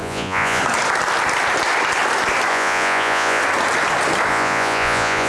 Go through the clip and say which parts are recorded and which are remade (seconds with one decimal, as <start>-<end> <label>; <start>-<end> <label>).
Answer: 0.0-0.6 remade; 0.6-2.5 recorded; 2.5-3.4 remade; 3.4-4.3 recorded; 4.3-5.3 remade